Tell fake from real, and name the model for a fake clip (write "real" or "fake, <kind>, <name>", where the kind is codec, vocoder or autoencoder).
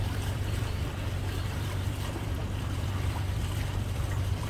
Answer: fake, vocoder, BigVGAN v2